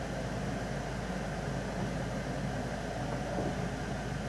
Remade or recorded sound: recorded